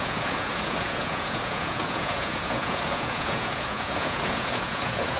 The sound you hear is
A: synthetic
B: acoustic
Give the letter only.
A